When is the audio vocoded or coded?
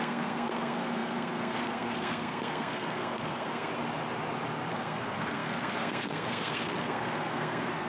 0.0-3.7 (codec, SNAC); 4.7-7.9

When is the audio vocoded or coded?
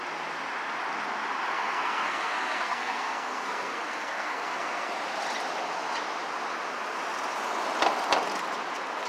1.5-4.9 (codec, SNAC)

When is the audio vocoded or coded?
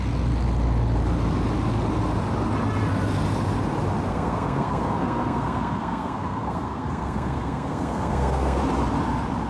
4.1-8.6 (codec, SNAC)